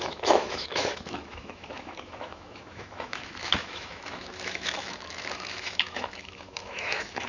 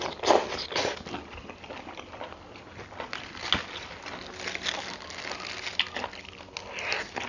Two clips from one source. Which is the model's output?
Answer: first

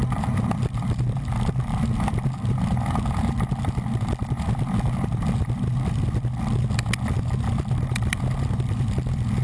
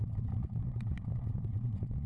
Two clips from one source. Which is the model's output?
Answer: second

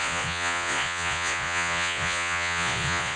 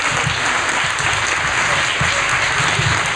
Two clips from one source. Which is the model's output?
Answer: first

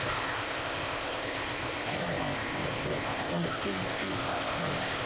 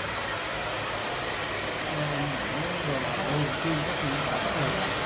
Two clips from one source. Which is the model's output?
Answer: first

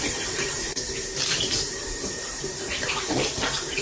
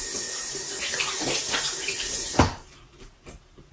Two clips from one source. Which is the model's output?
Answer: first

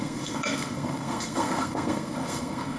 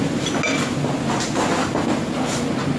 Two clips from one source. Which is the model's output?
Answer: first